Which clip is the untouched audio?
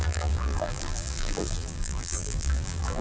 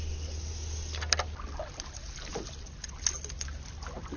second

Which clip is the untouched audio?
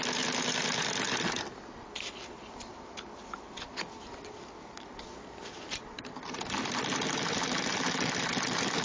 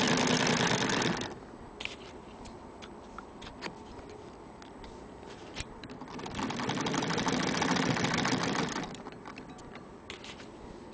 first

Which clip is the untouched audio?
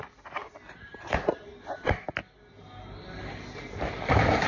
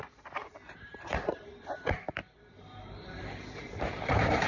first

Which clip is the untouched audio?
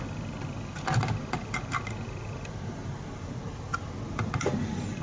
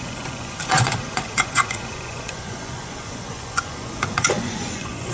first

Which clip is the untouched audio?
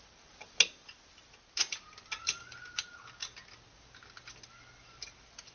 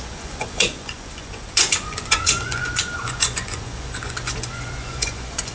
first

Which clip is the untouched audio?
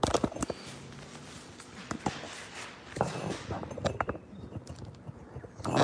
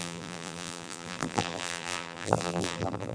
first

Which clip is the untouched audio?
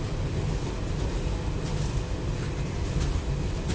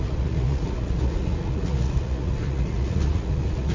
first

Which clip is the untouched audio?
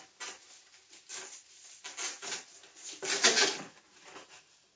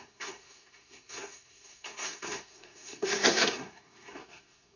first